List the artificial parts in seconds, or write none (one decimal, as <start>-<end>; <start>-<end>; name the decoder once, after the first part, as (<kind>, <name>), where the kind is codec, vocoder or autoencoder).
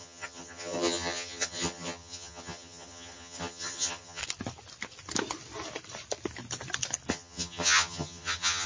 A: 0.0-4.2 (vocoder, HiFi-GAN); 7.1-8.7